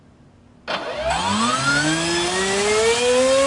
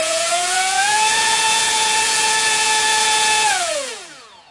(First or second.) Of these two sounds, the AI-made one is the second